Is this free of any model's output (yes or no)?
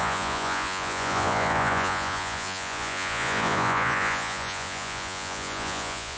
no